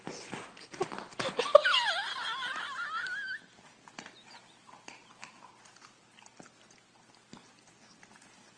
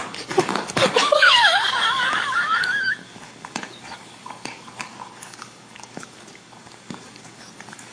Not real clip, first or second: second